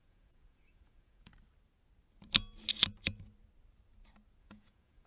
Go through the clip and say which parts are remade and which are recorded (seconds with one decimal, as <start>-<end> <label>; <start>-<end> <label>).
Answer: 0.0-1.3 remade; 1.3-4.4 recorded; 4.4-5.1 remade